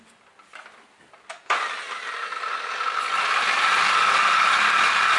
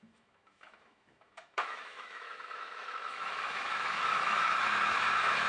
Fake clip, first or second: second